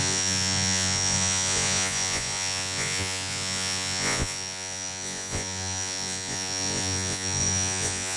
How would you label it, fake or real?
fake